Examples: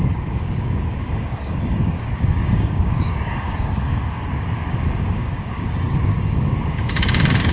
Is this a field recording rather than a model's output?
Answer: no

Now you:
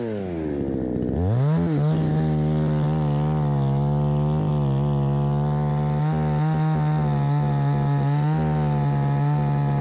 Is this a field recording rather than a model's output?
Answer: yes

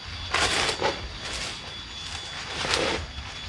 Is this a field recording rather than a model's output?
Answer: yes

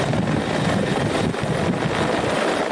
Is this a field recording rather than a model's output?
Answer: yes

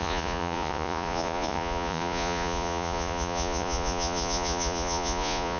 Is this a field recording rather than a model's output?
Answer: no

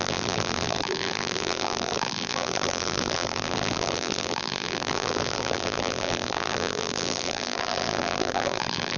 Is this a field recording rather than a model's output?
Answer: no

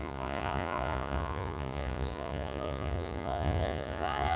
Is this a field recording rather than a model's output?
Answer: no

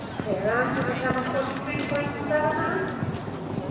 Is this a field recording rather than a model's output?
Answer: yes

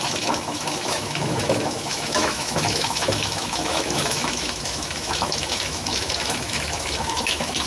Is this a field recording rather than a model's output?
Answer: no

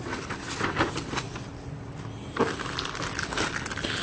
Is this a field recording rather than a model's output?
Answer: yes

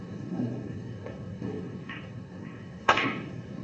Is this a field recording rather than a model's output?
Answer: no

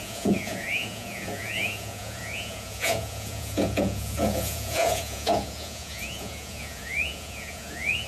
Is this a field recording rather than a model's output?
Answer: no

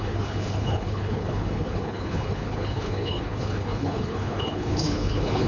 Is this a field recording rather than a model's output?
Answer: no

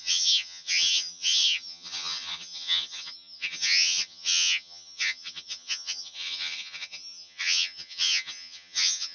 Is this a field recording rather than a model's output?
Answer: no